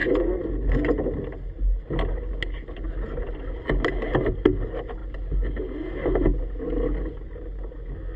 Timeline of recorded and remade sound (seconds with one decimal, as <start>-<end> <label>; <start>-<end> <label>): 0.0-8.2 recorded